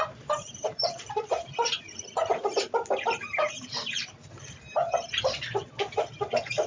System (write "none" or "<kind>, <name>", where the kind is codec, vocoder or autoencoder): vocoder, BigVGAN v2